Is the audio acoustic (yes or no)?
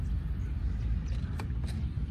yes